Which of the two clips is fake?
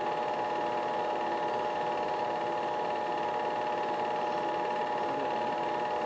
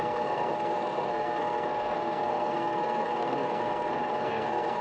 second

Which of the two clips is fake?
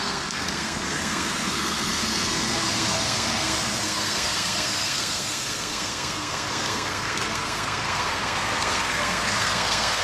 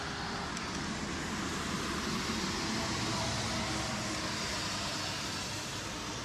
first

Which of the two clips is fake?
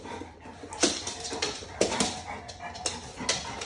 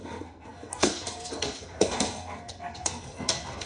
second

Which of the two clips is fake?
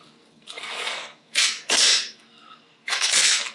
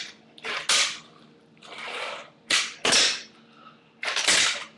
first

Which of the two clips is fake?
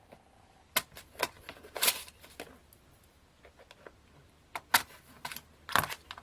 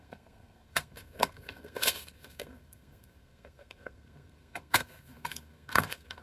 second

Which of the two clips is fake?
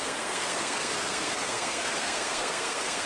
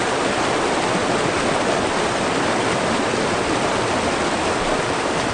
first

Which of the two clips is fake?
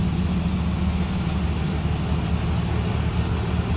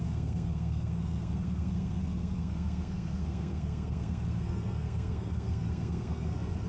second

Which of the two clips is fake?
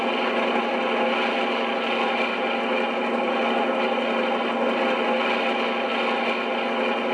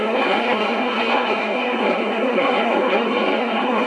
second